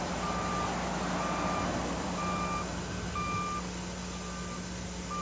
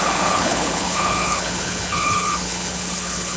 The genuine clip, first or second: first